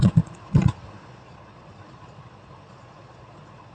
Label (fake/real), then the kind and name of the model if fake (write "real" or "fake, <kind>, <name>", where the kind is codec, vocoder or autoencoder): fake, vocoder, Vocos